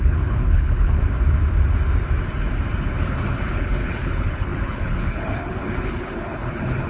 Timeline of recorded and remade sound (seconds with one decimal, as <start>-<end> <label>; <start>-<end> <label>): 0.0-1.0 remade; 1.0-2.8 recorded; 2.8-6.9 remade